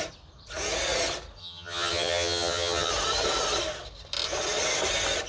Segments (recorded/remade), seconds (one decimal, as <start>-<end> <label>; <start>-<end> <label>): 0.0-1.4 recorded; 1.4-2.9 remade; 2.9-5.3 recorded

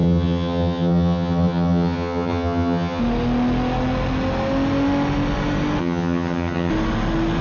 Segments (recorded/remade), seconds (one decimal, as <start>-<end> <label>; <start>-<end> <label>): 0.0-3.0 remade; 3.0-5.8 recorded; 5.8-6.7 remade; 6.7-7.4 recorded

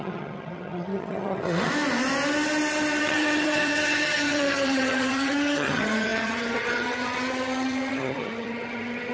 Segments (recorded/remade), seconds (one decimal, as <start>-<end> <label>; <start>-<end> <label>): 0.0-1.7 remade; 1.7-3.0 recorded; 3.0-9.1 remade

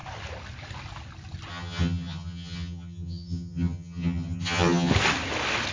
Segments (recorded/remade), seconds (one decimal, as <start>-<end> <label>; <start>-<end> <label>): 0.0-1.5 recorded; 1.5-4.9 remade; 4.9-5.7 recorded

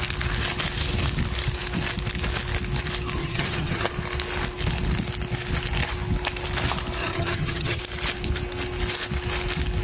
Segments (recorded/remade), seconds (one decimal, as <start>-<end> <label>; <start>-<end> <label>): 0.0-3.2 recorded; 3.2-3.9 remade; 3.9-7.0 recorded; 7.0-7.8 remade; 7.8-9.8 recorded

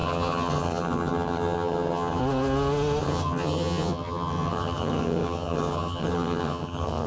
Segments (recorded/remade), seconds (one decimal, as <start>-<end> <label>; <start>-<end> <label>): 0.0-2.2 remade; 2.2-3.0 recorded; 3.0-7.1 remade

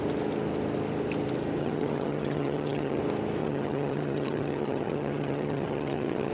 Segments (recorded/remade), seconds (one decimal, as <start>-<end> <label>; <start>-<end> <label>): 0.0-1.6 recorded; 1.6-3.0 remade; 3.0-3.4 recorded; 3.4-6.3 remade

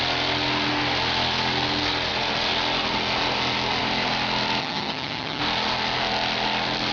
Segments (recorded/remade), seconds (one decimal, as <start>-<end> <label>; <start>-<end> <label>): 0.0-4.6 recorded; 4.6-5.4 remade; 5.4-6.9 recorded